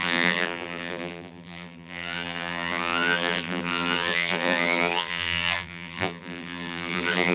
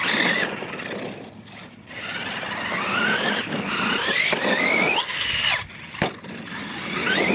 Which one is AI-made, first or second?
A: first